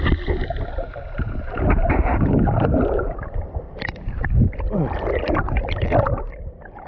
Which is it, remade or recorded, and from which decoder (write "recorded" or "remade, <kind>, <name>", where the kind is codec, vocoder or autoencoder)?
remade, vocoder, BigVGAN v2